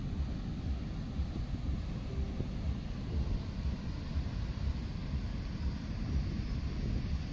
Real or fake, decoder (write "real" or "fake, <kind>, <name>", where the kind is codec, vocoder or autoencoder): real